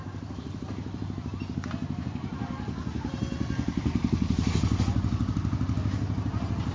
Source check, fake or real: real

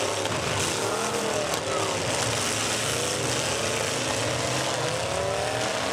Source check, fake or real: real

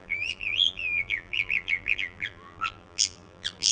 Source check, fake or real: fake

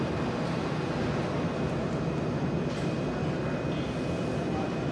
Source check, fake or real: fake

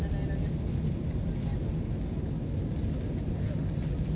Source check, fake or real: real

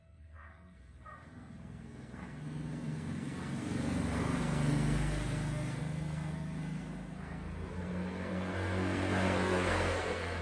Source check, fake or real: fake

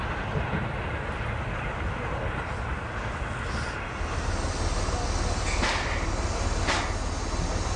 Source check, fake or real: real